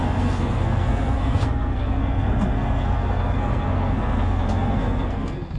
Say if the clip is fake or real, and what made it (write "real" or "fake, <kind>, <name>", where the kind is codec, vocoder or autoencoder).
fake, codec, SNAC